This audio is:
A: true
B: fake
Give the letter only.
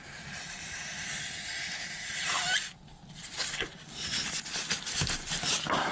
A